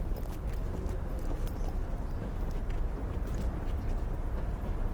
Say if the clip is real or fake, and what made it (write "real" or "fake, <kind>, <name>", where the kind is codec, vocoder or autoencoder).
real